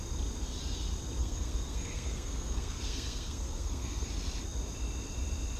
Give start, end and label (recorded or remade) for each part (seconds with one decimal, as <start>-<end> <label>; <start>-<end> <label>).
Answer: 0.0-1.2 recorded; 1.2-4.1 remade; 4.1-5.6 recorded

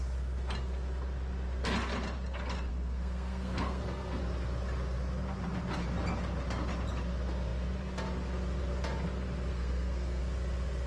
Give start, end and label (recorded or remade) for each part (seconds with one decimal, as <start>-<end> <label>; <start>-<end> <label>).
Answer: 0.0-2.7 recorded; 2.7-4.2 remade; 4.2-9.5 recorded; 9.5-10.2 remade; 10.2-10.9 recorded

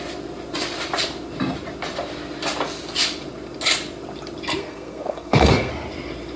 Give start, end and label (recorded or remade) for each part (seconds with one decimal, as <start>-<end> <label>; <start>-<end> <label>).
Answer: 0.0-4.6 recorded; 4.6-5.7 remade; 5.7-6.4 recorded

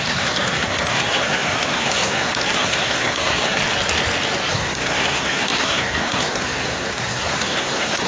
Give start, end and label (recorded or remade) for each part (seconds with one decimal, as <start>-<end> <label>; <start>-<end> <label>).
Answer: 0.0-3.6 remade; 3.6-4.5 recorded; 4.5-8.1 remade

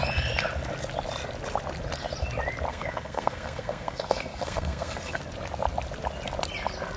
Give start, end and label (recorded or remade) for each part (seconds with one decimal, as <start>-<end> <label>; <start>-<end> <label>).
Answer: 0.0-2.7 recorded; 2.7-5.2 remade; 5.2-7.0 recorded

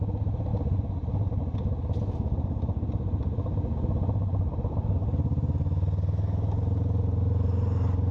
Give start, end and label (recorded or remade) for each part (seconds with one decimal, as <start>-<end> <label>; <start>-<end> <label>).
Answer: 0.0-8.1 recorded